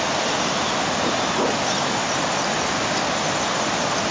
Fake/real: real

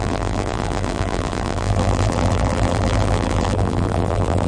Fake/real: fake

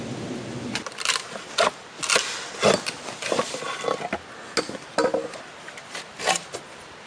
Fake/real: real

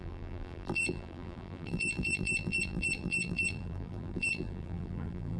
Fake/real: fake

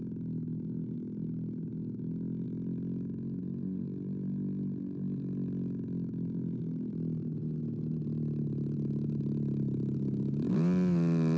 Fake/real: real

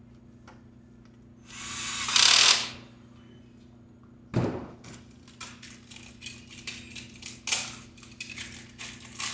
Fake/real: real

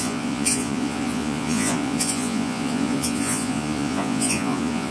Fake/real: fake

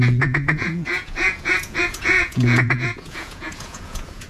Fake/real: fake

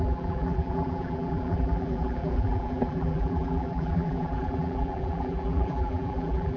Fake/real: fake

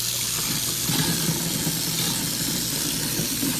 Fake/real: real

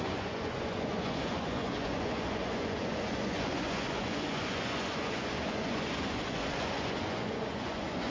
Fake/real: fake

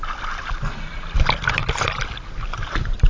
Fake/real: real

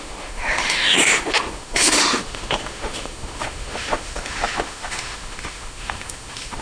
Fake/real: fake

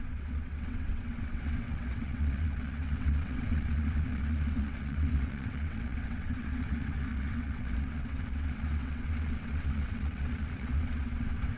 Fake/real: fake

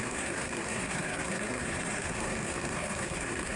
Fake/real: fake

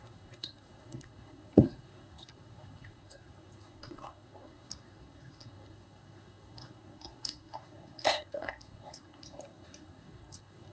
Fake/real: fake